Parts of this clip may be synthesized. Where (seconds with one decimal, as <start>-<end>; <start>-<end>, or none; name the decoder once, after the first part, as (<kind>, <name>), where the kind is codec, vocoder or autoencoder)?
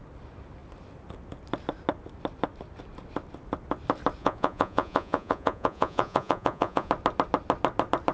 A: 4.2-6.9 (vocoder, Vocos)